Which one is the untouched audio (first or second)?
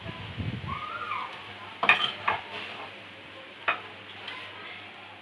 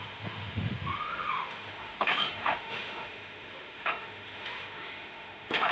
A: first